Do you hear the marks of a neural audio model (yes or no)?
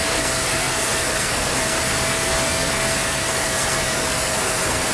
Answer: yes